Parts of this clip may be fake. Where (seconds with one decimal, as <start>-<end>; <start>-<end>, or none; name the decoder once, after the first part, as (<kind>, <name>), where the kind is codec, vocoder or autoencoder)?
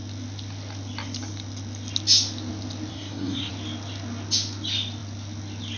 2.9-3.5 (codec, SNAC)